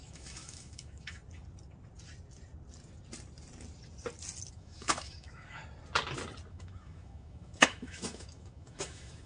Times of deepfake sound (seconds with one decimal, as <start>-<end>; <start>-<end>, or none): 0.0-1.2; 4.5-5.6; 6.5-9.3